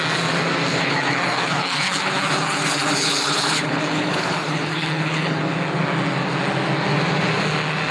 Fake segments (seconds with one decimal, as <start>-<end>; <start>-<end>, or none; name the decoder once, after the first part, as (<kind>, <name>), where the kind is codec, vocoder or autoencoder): 0.7-5.4 (codec, HILCodec)